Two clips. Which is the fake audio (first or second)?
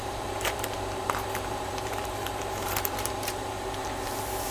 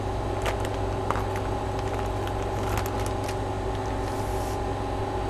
first